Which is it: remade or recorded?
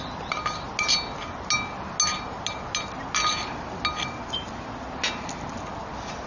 recorded